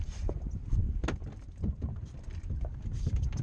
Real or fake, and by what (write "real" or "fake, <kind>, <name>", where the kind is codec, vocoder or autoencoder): real